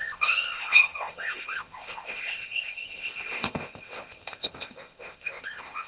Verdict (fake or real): fake